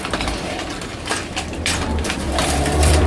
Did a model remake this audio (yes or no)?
yes